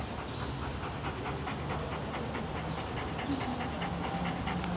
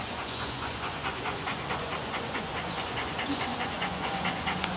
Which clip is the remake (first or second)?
second